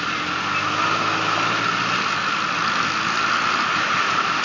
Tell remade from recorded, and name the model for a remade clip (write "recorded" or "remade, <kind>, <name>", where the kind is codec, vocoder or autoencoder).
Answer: recorded